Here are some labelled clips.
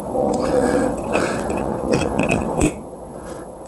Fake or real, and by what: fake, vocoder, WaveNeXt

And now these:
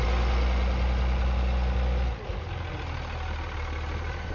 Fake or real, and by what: real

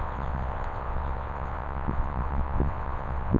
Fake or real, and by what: fake, vocoder, WaveNeXt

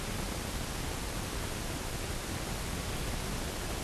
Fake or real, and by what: real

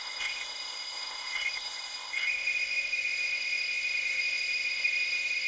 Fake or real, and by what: fake, codec, ZipCodec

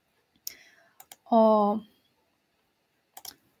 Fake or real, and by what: real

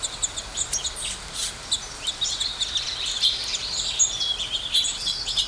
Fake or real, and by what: real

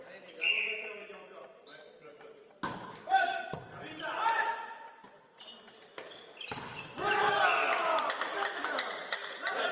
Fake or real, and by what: real